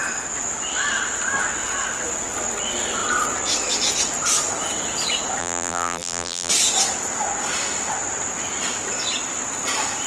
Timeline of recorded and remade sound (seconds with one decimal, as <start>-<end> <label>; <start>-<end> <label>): 0.0-5.4 recorded; 5.4-6.5 remade; 6.5-10.1 recorded